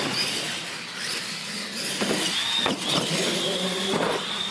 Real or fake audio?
real